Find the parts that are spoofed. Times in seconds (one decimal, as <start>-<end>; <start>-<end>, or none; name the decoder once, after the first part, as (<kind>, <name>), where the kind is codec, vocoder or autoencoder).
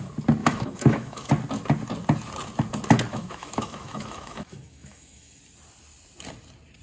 0.4-1.3 (autoencoder, DAC-VAE); 3.1-5.4